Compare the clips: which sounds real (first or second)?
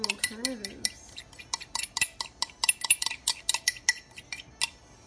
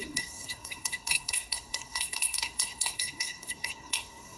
first